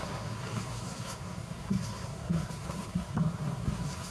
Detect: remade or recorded remade